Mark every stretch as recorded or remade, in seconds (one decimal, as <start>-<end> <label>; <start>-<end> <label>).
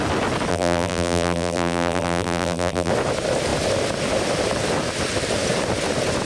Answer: 0.0-0.5 recorded; 0.5-2.9 remade; 2.9-6.3 recorded